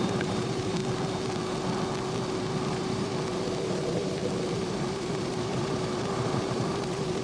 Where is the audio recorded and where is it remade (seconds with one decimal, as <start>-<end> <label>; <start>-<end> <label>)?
0.0-0.8 remade; 0.8-2.7 recorded; 2.7-3.1 remade; 3.1-3.6 recorded; 3.6-4.2 remade; 4.2-4.7 recorded; 4.7-7.2 remade